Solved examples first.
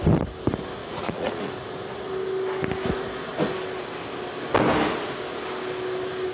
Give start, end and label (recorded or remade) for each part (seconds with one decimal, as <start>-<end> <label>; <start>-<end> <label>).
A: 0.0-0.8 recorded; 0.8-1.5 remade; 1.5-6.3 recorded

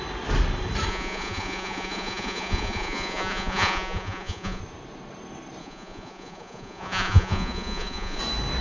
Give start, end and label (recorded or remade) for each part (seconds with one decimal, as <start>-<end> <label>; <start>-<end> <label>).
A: 0.0-0.9 recorded; 0.9-4.6 remade; 4.6-5.6 recorded; 5.6-8.2 remade; 8.2-8.6 recorded

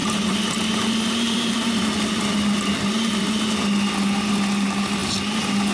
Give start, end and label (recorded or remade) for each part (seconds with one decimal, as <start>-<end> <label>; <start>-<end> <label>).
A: 0.0-3.4 remade; 3.4-5.7 recorded

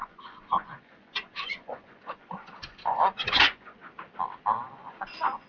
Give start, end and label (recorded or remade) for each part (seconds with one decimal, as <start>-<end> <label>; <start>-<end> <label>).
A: 0.0-3.8 remade; 3.8-4.6 recorded; 4.6-5.5 remade

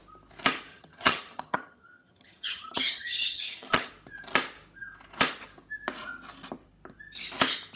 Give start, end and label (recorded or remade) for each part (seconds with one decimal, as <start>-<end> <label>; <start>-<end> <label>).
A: 0.0-0.7 recorded; 0.7-3.9 remade; 3.9-7.8 recorded